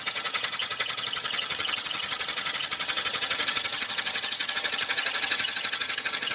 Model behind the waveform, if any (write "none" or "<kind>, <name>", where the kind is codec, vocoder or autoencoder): vocoder, HiFi-GAN